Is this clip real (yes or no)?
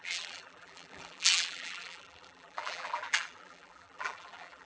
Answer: no